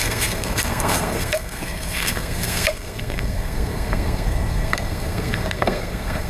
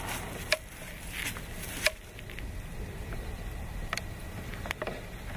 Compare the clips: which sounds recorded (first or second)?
second